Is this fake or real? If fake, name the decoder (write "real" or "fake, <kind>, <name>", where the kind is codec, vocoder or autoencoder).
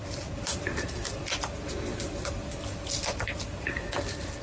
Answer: real